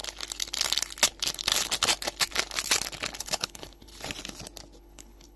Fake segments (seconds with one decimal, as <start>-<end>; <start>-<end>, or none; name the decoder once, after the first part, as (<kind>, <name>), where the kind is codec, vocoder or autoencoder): 3.2-3.9 (codec, HILCodec); 4.8-5.4